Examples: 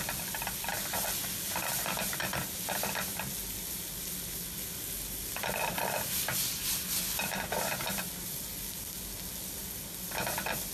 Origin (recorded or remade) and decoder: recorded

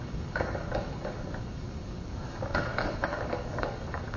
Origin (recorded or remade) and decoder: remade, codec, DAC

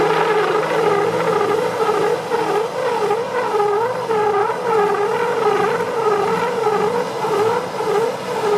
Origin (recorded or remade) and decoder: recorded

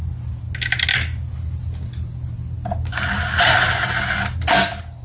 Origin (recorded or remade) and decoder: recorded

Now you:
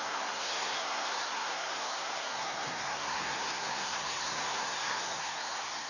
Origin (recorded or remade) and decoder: remade, codec, SNAC